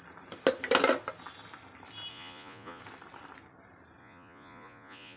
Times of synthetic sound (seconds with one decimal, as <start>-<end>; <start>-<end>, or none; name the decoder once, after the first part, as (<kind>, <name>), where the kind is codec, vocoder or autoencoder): 2.1-2.8 (vocoder, Vocos); 4.0-5.2